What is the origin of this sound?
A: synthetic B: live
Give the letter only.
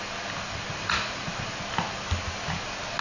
B